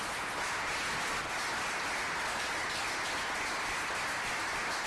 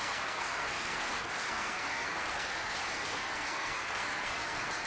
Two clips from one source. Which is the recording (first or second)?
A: first